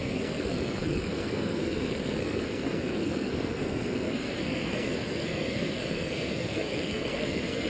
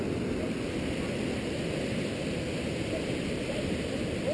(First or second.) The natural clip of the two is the second